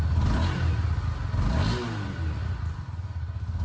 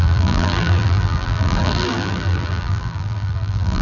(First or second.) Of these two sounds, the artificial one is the second